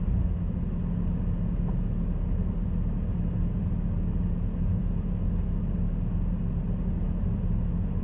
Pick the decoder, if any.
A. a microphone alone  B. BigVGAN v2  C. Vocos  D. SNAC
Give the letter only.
A